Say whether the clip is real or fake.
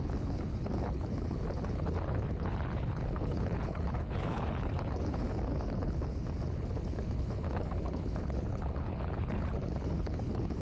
fake